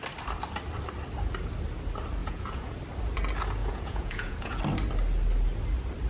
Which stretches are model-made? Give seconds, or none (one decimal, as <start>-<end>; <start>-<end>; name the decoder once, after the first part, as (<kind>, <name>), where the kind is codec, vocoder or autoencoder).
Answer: 2.2-2.8 (vocoder, Vocos); 3.6-4.6